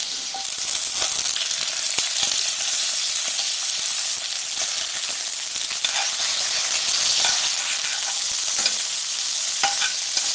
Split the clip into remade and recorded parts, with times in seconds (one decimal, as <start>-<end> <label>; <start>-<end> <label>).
0.0-10.3 recorded

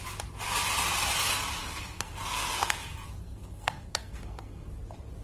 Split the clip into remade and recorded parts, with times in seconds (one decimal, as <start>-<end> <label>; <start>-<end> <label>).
0.0-1.6 recorded; 1.6-4.7 remade; 4.7-5.2 recorded

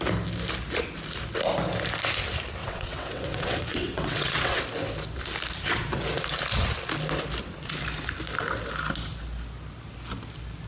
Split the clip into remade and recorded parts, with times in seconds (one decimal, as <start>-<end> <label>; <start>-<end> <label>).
0.0-2.6 recorded; 2.6-4.6 remade; 4.6-10.7 recorded